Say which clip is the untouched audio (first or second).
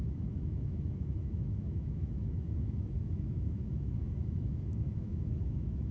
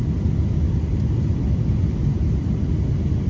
second